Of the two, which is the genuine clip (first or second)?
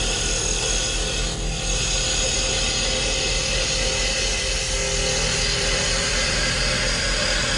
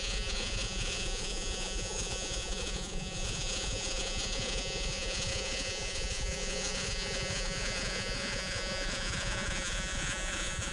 first